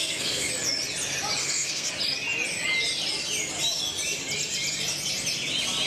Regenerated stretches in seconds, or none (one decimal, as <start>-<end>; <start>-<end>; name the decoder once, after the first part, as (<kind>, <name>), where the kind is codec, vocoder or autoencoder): 0.0-0.5 (codec, SNAC); 1.4-1.9